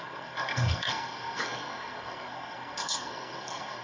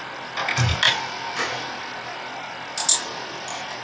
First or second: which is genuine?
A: second